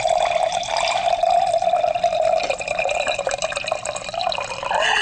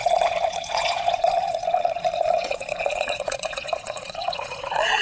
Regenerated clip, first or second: second